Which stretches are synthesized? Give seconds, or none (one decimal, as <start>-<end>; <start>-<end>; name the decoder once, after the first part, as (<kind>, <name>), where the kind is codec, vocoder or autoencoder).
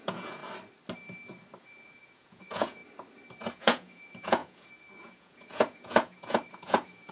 0.0-0.4 (vocoder, Vocos); 1.6-2.8; 3.5-7.1